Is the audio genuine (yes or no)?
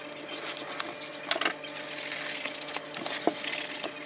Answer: yes